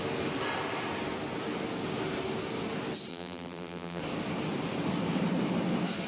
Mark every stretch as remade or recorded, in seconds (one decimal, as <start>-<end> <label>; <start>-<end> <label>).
0.0-3.1 recorded; 3.1-4.0 remade; 4.0-6.1 recorded